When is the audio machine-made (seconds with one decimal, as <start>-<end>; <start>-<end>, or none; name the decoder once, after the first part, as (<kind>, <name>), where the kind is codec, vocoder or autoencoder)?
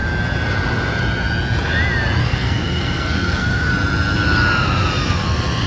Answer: 2.2-3.7 (codec, SNAC)